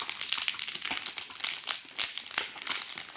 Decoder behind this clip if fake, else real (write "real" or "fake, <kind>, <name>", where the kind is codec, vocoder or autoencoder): real